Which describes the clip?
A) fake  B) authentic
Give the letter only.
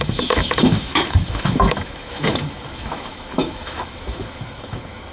A